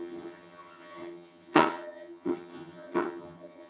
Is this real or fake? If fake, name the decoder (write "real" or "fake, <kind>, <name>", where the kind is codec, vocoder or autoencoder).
fake, vocoder, HiFi-GAN